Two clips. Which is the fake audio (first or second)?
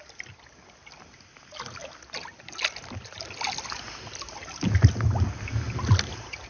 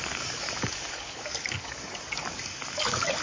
second